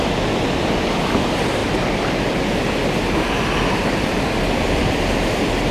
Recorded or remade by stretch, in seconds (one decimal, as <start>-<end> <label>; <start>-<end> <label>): 0.0-5.7 recorded